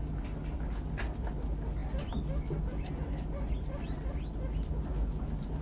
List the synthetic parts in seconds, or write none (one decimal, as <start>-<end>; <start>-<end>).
none